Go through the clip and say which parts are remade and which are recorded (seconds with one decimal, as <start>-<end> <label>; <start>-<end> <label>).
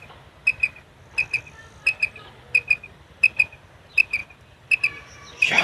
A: 0.0-5.6 recorded